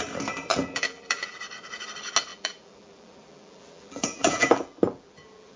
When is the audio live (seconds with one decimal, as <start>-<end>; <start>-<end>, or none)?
0.0-0.5; 1.4-2.3